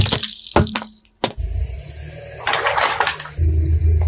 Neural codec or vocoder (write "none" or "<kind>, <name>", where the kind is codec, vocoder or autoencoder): none